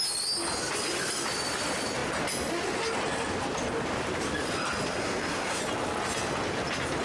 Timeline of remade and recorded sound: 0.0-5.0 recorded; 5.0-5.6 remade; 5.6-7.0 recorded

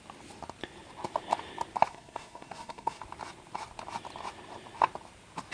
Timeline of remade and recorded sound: 0.0-1.9 recorded; 1.9-3.0 remade; 3.0-5.5 recorded

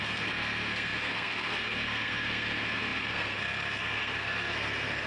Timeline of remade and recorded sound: 0.0-5.1 remade

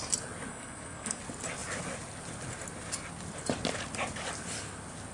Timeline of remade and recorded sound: 0.0-0.5 recorded; 0.5-1.2 remade; 1.2-5.1 recorded

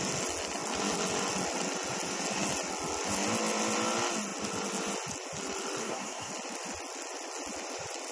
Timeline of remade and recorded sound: 0.0-5.8 recorded; 5.8-6.3 remade; 6.3-8.1 recorded

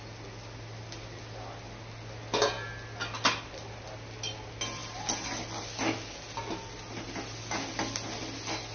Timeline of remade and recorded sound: 0.0-8.7 recorded